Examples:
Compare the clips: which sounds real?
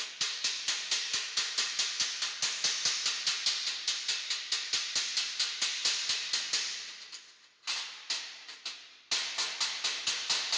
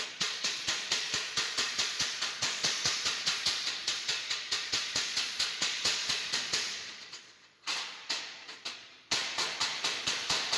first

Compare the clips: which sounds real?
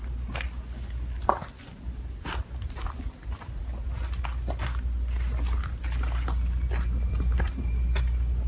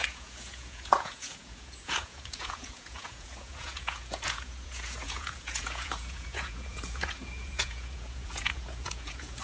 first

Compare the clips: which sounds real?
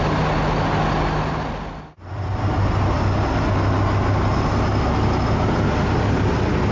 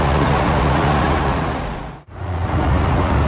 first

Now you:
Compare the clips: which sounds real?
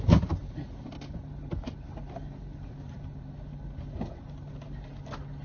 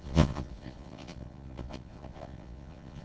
first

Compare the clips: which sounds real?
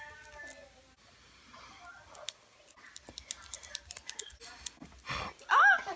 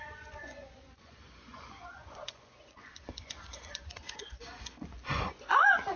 first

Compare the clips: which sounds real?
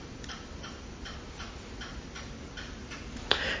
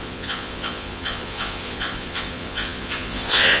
first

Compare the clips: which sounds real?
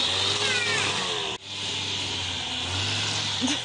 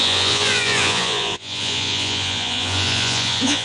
first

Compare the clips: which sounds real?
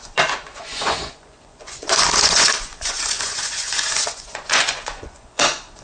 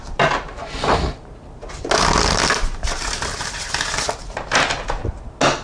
second